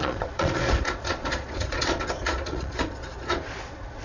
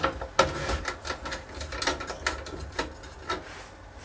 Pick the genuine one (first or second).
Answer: second